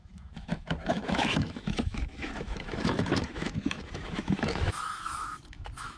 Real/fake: fake